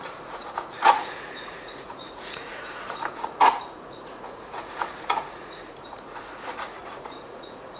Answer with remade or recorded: remade